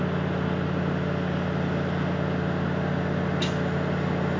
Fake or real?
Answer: real